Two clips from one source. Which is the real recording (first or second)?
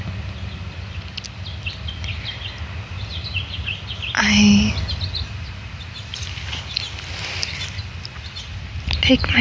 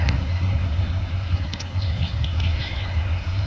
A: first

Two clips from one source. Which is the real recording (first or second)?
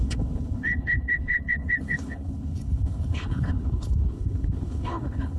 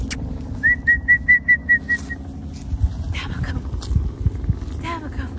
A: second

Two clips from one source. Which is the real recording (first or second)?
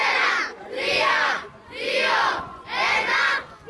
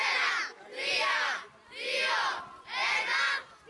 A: second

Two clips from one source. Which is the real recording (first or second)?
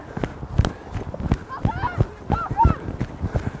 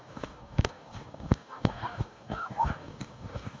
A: first